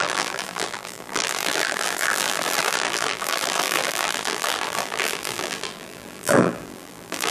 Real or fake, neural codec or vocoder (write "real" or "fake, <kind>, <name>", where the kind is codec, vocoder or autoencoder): fake, vocoder, BigVGAN v2